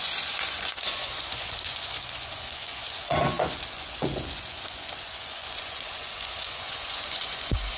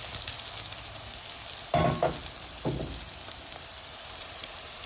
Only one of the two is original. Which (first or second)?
second